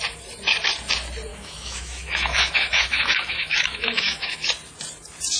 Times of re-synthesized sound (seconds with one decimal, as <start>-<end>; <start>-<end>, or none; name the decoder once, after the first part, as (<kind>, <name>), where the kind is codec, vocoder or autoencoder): 1.3-4.5 (autoencoder, DAC-VAE)